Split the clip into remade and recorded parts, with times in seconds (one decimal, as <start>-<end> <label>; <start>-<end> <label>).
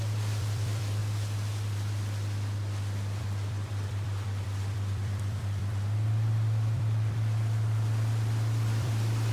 0.0-1.0 remade; 1.0-3.2 recorded; 3.2-9.3 remade